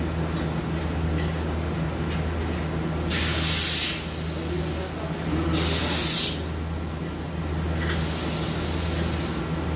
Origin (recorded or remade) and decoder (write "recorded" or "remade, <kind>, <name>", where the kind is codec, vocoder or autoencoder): recorded